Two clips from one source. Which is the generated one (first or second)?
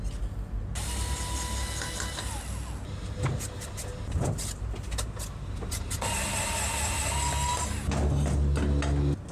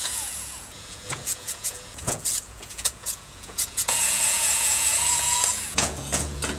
second